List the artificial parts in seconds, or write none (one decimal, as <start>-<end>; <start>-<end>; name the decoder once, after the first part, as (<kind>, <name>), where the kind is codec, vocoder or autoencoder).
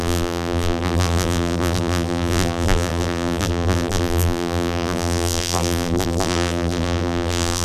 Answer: 0.0-7.6 (vocoder, BigVGAN v2)